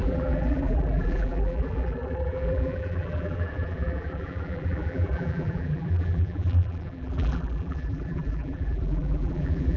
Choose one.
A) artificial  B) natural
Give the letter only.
A